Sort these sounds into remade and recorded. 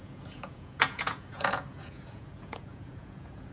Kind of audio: remade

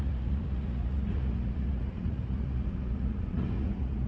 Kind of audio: remade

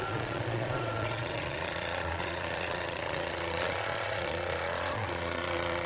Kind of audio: remade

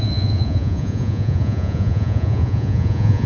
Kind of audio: remade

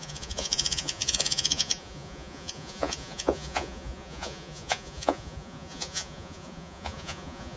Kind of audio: remade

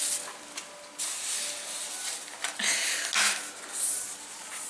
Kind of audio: recorded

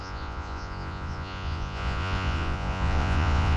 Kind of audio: remade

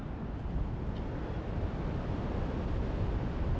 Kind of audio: recorded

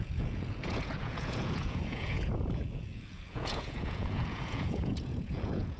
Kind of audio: remade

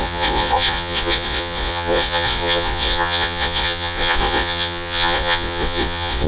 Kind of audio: remade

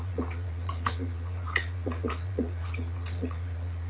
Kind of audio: remade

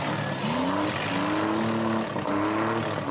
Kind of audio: recorded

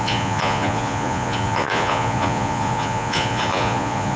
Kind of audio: remade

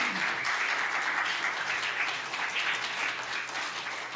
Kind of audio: recorded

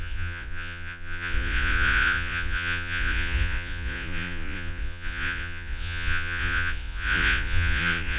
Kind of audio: remade